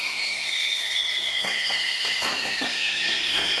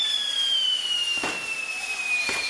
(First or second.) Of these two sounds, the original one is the second